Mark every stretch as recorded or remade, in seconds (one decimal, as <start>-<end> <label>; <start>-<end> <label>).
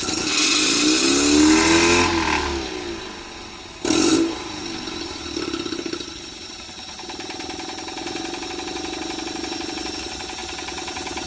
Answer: 0.0-4.1 recorded; 4.1-8.5 remade; 8.5-11.3 recorded